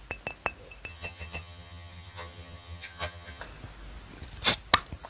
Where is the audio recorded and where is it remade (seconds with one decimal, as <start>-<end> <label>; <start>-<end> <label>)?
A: 0.0-0.9 recorded; 0.9-3.4 remade; 3.4-5.1 recorded